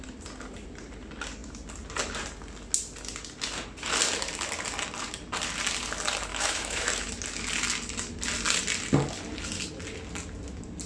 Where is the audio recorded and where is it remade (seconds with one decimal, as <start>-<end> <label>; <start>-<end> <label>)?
0.0-6.3 recorded; 6.3-7.1 remade; 7.1-10.9 recorded